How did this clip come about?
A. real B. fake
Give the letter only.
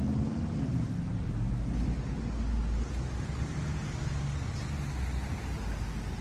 A